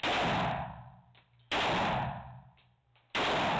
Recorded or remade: recorded